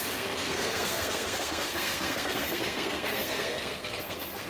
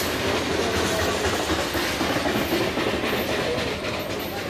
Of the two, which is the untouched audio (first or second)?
second